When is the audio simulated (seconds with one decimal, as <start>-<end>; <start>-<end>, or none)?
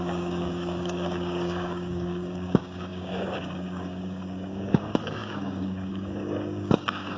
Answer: 0.0-7.2